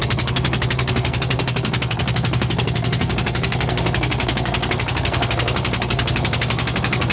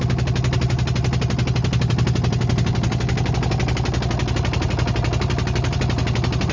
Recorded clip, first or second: second